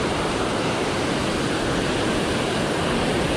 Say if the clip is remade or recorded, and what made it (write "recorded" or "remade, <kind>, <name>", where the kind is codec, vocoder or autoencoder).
recorded